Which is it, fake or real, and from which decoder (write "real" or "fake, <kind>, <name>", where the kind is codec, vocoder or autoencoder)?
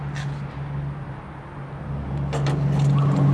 real